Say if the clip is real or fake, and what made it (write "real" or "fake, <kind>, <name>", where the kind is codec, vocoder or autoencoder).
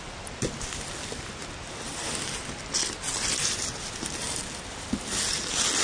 real